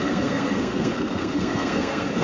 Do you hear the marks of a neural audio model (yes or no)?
yes